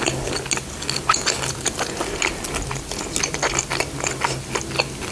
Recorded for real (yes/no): yes